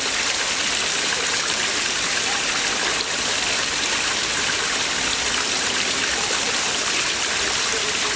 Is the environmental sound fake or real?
fake